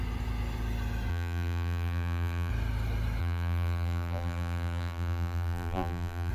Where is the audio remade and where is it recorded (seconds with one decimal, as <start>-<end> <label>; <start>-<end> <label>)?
0.0-1.1 recorded; 1.1-2.5 remade; 2.5-3.2 recorded; 3.2-6.3 remade